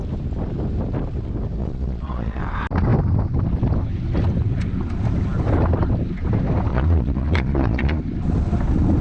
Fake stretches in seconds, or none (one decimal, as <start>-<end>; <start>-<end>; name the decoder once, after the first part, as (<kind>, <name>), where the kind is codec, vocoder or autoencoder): 1.6-2.4 (vocoder, Vocos); 6.7-8.0